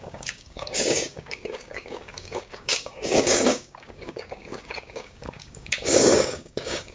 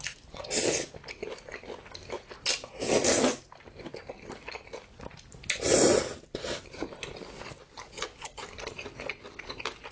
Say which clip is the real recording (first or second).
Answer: second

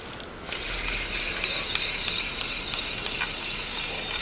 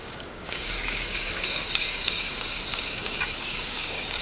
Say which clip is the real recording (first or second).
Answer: first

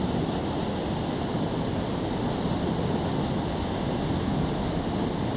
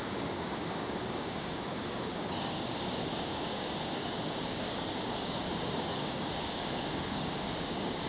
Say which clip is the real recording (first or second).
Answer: first